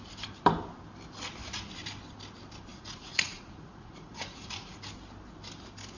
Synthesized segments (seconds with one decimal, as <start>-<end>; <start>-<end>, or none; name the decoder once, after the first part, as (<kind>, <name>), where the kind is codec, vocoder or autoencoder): 2.7-4.9 (vocoder, Vocos)